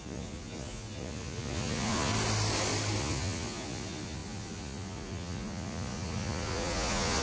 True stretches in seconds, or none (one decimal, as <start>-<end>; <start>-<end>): 2.1-3.0